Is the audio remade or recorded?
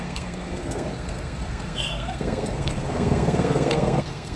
remade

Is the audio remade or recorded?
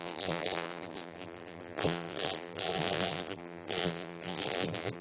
remade